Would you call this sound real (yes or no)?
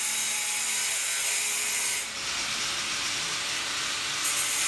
yes